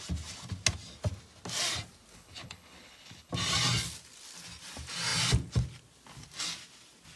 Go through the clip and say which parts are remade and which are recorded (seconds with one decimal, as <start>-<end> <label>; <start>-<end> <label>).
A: 0.0-2.1 recorded; 2.1-3.3 remade; 3.3-7.2 recorded